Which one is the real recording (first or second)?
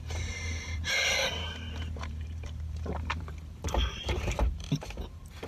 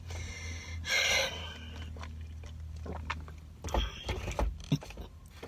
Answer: second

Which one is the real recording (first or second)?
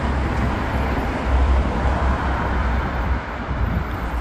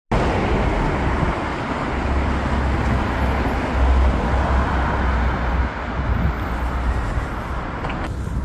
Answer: second